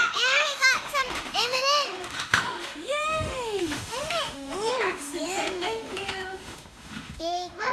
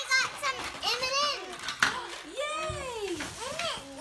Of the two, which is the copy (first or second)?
first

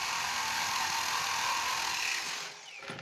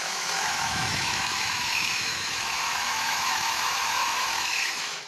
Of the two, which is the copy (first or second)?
second